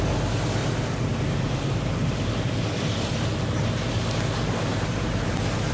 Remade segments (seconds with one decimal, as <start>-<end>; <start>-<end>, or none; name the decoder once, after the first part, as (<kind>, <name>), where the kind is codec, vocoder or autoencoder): 0.6-2.3 (vocoder, BigVGAN v2); 4.7-5.3